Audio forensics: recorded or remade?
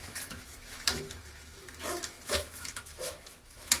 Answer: remade